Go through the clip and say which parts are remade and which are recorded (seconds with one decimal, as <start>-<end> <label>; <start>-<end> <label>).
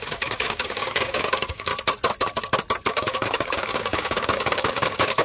0.0-1.7 remade; 1.7-2.9 recorded; 2.9-5.2 remade